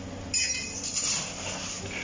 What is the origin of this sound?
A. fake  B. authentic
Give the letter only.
B